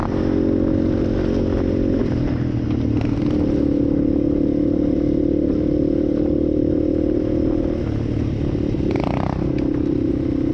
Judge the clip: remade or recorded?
recorded